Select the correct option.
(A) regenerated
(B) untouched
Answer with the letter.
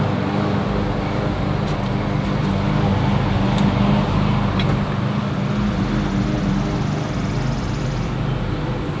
B